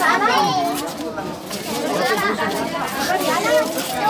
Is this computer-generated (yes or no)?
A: yes